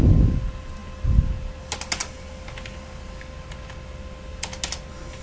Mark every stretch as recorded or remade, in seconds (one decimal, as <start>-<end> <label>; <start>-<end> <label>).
0.0-5.2 recorded